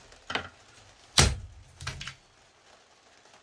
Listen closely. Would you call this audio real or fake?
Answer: real